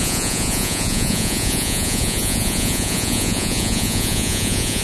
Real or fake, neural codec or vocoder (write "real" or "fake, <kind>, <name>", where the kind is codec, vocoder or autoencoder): fake, vocoder, Vocos